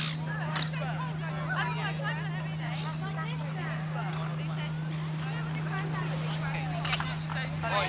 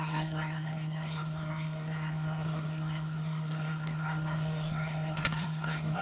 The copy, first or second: second